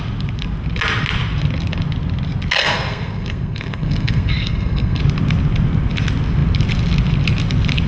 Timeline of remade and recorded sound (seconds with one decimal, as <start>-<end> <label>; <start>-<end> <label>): 0.0-2.6 recorded; 2.6-5.0 remade; 5.0-7.9 recorded